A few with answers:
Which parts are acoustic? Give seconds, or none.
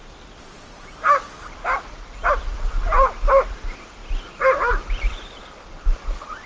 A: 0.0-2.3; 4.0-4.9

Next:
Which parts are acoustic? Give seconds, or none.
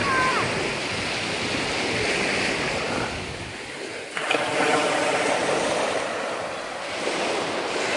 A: 0.0-8.0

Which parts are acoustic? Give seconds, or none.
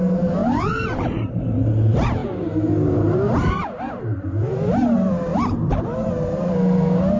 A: none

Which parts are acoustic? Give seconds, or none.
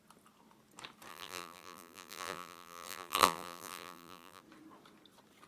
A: 0.0-1.1; 4.4-5.5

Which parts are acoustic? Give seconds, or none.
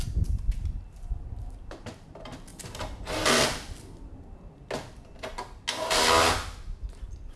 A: 2.5-6.9